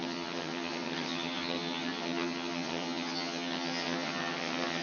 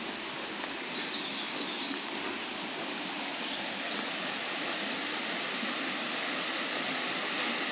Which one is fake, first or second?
first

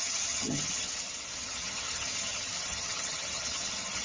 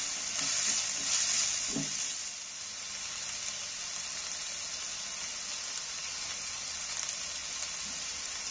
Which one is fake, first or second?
first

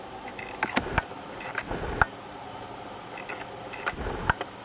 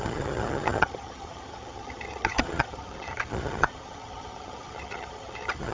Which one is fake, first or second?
second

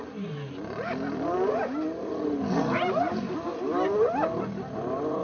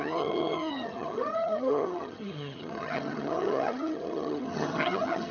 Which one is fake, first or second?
second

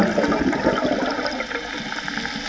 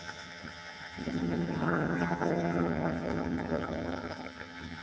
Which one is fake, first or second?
second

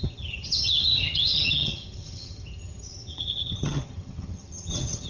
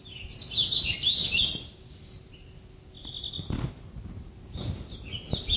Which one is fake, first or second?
first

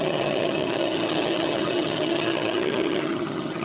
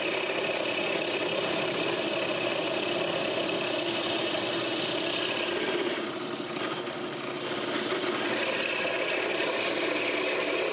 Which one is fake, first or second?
first